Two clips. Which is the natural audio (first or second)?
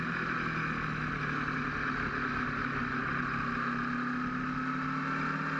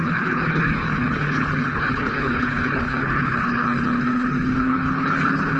first